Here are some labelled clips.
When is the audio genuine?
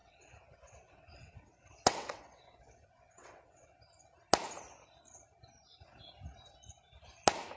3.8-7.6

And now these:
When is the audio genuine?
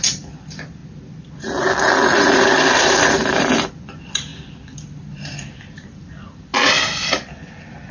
0.8-3.5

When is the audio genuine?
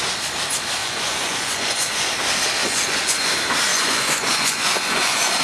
0.0-0.8; 2.1-2.6; 3.3-3.7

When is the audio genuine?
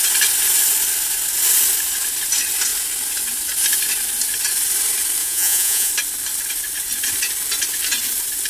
0.0-5.2; 5.9-8.5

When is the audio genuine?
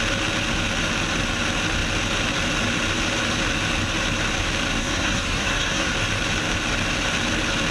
0.0-4.8; 5.9-7.7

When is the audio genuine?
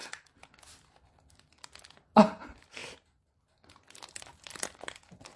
0.0-5.4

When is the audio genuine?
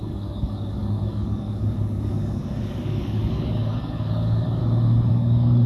4.6-5.1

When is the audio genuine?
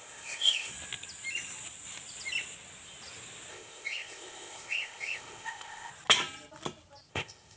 0.7-3.5; 5.9-7.1